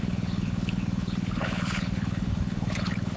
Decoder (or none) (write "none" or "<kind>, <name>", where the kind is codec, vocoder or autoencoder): codec, HILCodec